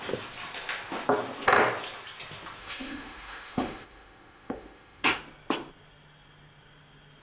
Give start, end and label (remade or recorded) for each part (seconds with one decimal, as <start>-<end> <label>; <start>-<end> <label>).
0.0-2.6 recorded; 2.6-5.2 remade; 5.2-7.2 recorded